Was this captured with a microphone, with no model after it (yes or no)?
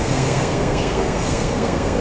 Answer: no